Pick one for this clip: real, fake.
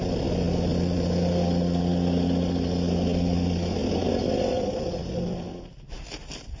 real